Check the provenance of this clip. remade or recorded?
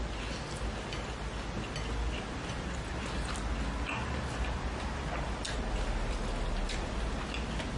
recorded